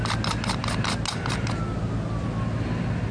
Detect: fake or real real